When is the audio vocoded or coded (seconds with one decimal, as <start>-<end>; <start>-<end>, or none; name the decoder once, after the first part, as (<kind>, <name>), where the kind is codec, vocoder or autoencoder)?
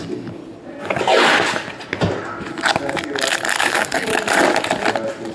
0.0-0.4 (codec, DAC); 3.6-4.1